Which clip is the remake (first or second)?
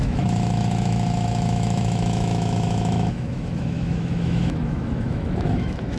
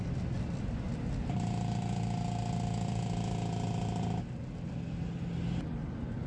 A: first